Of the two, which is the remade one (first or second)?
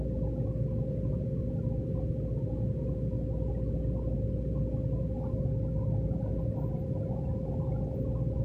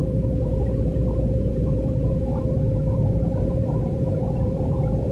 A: second